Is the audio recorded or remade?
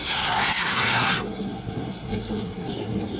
remade